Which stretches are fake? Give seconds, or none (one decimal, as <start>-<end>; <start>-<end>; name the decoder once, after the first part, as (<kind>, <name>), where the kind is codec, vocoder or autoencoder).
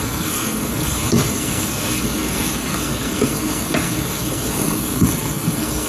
0.0-5.9 (codec, SNAC)